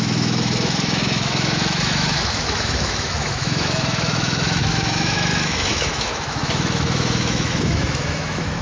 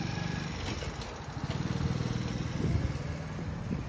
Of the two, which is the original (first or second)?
second